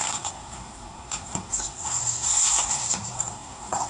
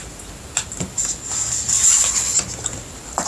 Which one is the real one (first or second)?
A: second